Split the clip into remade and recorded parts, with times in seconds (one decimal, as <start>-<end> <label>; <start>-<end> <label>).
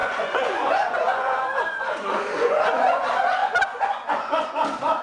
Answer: 0.0-3.0 remade; 3.0-3.4 recorded; 3.4-4.5 remade; 4.5-5.0 recorded